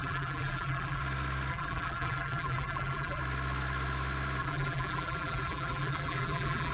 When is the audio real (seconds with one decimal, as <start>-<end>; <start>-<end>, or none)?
1.0-1.5; 3.2-4.4